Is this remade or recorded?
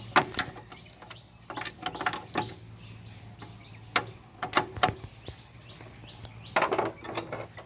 recorded